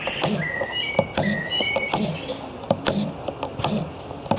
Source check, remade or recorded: recorded